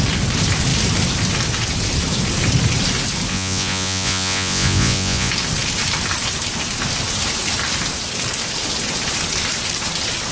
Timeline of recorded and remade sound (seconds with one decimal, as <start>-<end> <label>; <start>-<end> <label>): 0.0-3.3 recorded; 3.3-5.3 remade; 5.3-10.3 recorded